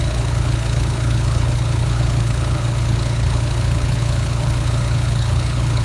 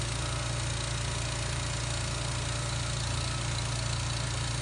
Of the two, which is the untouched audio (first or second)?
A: second